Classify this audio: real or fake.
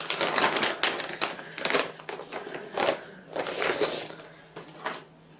real